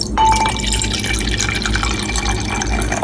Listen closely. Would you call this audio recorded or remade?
recorded